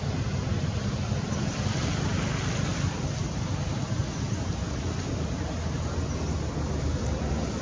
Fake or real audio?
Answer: fake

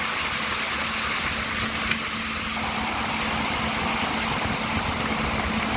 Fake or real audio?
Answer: real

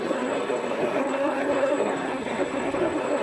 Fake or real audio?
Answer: fake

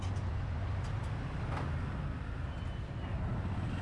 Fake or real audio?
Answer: real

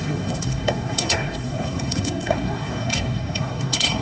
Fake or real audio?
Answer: fake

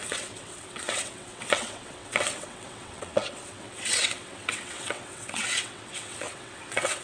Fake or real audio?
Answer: fake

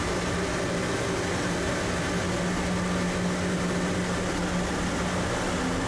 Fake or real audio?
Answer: real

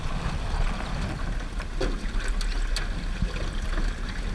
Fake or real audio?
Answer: real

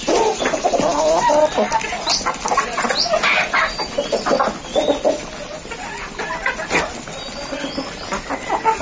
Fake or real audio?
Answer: real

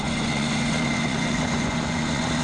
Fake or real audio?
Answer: fake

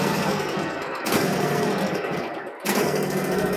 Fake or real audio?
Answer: fake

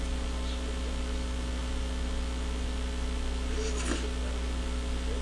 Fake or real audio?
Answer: real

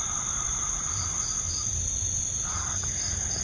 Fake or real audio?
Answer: real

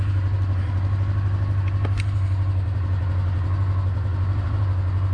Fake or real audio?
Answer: real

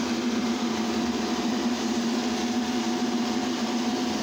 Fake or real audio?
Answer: fake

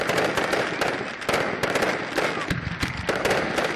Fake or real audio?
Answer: real